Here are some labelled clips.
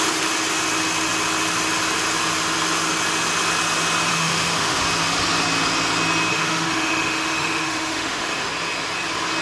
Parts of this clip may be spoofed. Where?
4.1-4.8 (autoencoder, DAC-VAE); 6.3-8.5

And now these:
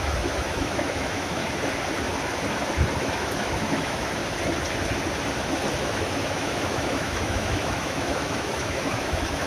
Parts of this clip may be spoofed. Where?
0.0-1.4 (autoencoder, DAC-VAE); 3.0-4.2; 5.8-9.5

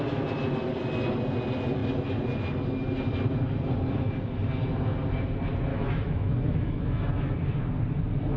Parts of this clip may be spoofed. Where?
5.7-7.1 (autoencoder, DAC-VAE)

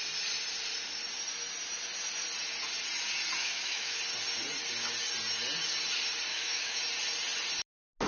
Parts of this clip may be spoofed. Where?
3.4-4.0 (autoencoder, DAC-VAE); 6.3-6.8

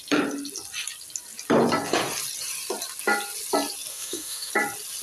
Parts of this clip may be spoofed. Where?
3.9-4.5 (autoencoder, DAC-VAE)

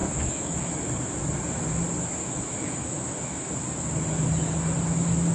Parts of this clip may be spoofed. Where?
0.0-0.8 (autoencoder, DAC-VAE); 2.2-3.5

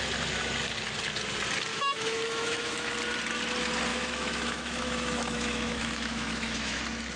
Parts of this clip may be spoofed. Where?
1.7-2.9 (autoencoder, DAC-VAE); 3.9-6.8

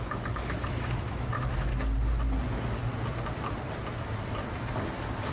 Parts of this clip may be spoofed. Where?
0.0-1.7 (autoencoder, DAC-VAE)